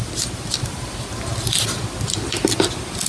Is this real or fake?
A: real